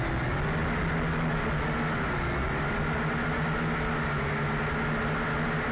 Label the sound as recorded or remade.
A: recorded